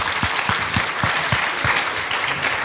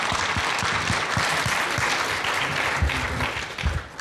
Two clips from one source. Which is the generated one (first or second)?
first